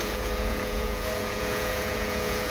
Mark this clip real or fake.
fake